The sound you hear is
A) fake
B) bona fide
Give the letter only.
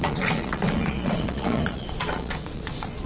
A